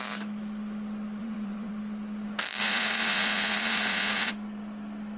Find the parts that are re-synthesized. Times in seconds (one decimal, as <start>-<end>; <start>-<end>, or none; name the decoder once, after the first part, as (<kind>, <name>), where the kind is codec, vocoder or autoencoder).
1.2-1.7 (vocoder, Vocos); 2.6-4.3